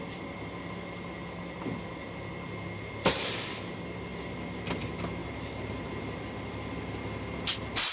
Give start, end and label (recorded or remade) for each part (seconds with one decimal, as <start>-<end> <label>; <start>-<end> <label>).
0.0-5.2 recorded; 5.2-5.8 remade; 5.8-7.9 recorded